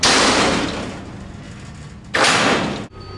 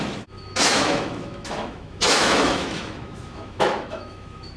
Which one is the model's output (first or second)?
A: second